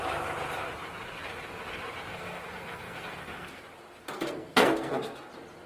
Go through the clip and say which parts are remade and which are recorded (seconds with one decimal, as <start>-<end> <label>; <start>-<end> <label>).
0.0-2.1 recorded; 2.1-3.6 remade; 3.6-4.0 recorded; 4.0-5.3 remade; 5.3-5.7 recorded